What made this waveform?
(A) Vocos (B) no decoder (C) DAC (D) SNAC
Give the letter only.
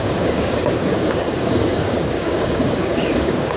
C